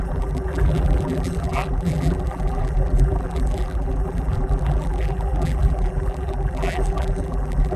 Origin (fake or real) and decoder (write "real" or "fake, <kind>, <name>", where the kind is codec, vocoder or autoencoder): fake, vocoder, BigVGAN v2